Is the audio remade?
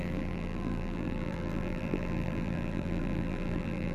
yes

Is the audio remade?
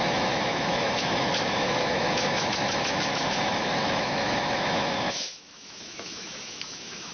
yes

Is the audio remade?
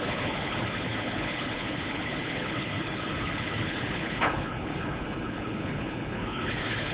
yes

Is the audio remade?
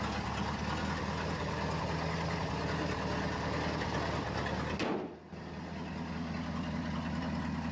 no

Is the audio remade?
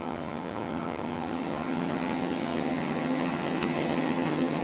yes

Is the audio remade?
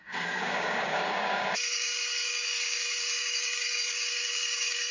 yes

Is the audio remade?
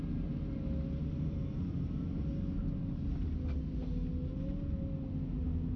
no